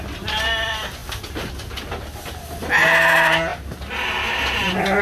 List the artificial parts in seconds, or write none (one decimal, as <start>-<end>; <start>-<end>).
none